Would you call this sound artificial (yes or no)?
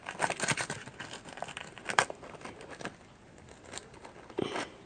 no